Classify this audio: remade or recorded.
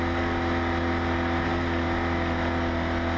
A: recorded